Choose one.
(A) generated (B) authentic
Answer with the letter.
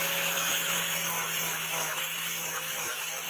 A